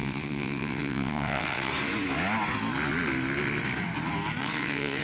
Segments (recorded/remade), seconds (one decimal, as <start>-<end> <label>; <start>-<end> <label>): 0.0-1.7 remade; 1.7-4.4 recorded; 4.4-5.0 remade